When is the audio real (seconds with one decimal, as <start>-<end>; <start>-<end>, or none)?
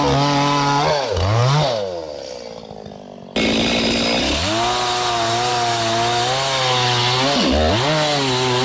0.0-8.6